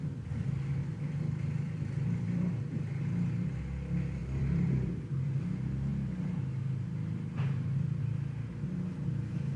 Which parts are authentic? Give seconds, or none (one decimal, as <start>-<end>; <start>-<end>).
0.0-0.8; 2.5-4.2; 5.4-9.6